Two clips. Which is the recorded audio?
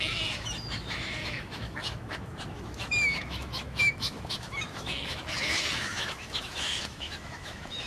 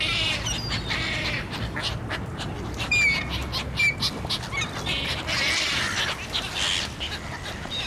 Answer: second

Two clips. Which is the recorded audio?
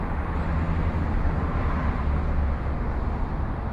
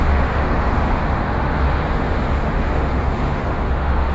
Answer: first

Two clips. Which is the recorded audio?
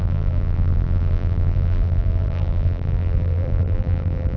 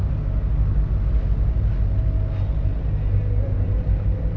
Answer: second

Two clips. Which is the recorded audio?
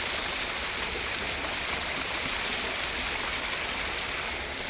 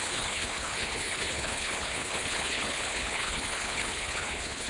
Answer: first